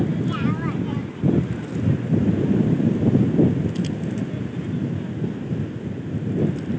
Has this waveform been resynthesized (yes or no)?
no